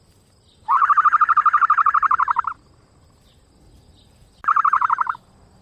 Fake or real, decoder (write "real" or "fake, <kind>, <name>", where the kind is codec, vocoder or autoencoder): real